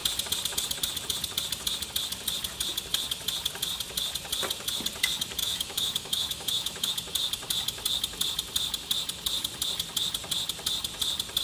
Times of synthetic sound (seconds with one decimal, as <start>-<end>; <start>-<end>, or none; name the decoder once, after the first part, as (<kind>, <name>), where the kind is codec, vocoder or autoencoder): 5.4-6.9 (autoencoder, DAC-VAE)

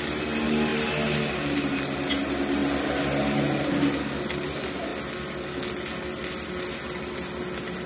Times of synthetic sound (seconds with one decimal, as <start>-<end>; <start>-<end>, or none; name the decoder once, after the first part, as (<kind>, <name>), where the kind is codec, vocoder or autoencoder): none

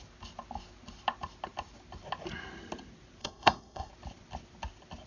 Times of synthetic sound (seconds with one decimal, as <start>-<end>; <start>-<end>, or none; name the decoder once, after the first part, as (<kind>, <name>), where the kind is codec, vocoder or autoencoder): 3.2-3.9 (codec, SNAC)